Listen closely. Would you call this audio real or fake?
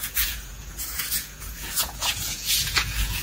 fake